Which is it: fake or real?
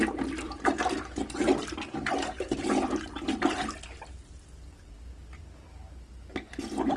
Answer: real